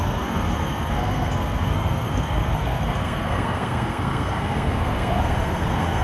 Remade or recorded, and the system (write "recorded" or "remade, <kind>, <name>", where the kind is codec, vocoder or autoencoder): remade, codec, SNAC